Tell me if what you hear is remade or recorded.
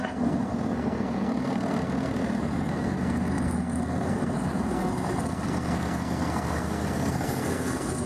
remade